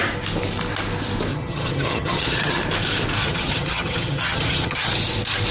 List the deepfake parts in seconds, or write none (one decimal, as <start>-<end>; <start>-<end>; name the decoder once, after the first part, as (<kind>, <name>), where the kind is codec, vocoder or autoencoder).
1.3-2.6 (vocoder, HiFi-GAN); 3.2-4.9